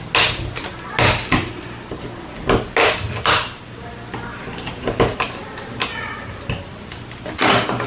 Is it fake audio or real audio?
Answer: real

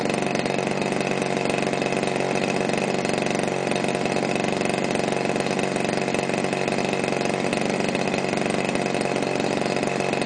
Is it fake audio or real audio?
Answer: real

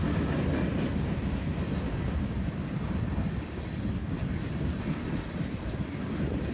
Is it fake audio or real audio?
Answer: real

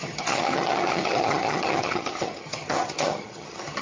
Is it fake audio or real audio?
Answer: fake